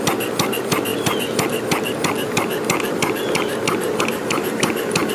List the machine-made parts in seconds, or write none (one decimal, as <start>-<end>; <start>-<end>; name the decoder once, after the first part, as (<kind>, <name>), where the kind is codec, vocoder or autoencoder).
none